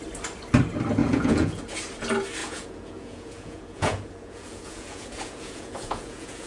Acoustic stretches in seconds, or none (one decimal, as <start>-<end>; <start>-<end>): 0.0-1.0; 1.6-2.4